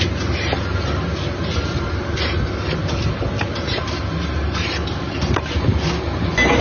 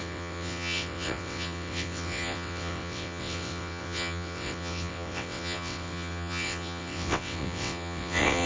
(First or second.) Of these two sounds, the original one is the first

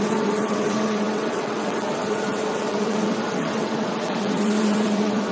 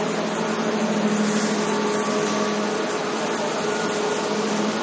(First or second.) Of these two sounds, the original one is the second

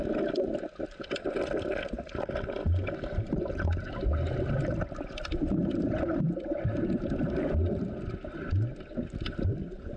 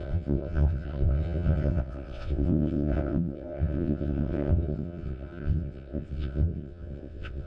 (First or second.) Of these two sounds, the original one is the first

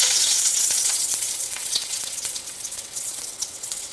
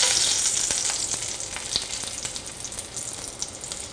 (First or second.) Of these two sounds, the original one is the second